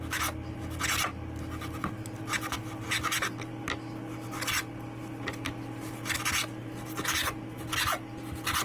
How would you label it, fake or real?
real